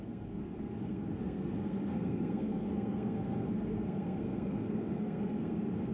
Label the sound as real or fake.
fake